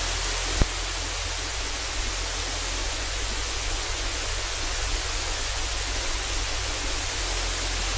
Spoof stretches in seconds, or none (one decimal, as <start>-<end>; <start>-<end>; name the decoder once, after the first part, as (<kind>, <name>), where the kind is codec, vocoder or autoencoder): 1.5-2.1 (vocoder, Vocos); 2.8-7.2

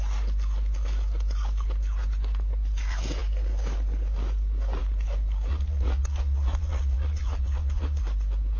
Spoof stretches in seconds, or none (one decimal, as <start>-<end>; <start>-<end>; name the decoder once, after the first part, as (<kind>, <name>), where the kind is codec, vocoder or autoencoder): 5.5-8.0 (vocoder, Vocos)

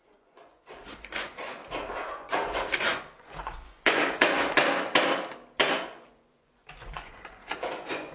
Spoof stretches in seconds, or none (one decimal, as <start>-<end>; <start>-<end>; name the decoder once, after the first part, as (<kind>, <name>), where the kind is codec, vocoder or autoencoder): 0.0-1.6 (vocoder, Vocos); 2.1-4.6; 5.6-8.1

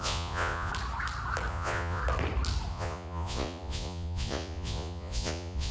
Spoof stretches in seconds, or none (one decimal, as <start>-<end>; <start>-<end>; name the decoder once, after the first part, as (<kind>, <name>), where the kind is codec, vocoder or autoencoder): 0.0-0.7 (vocoder, Vocos); 1.5-2.0; 2.7-5.7

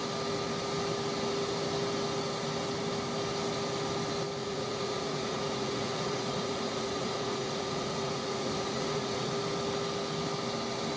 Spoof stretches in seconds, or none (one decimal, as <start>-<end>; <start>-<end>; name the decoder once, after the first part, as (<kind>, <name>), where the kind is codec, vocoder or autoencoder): 4.4-9.3 (vocoder, Vocos)

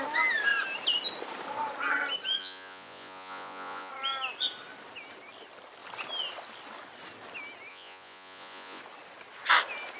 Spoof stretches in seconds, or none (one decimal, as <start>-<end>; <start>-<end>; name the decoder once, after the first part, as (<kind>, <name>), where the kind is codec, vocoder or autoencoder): 2.4-3.9 (vocoder, Vocos); 7.7-8.8

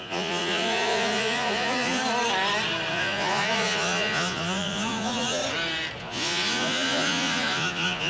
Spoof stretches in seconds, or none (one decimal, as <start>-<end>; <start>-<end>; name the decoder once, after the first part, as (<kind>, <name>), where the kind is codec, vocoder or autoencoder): 0.0-2.0 (vocoder, Vocos); 2.9-5.4; 6.0-8.1